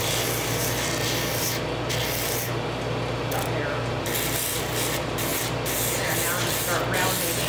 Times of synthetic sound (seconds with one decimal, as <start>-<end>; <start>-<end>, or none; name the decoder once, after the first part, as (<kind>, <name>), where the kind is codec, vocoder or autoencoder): none